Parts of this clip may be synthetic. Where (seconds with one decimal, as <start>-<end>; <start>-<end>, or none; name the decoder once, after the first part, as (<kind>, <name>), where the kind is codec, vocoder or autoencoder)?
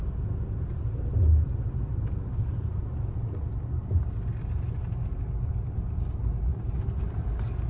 6.5-7.0 (vocoder, BigVGAN v2)